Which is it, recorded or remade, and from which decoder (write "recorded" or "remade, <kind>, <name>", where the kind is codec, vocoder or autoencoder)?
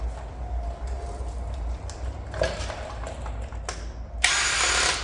recorded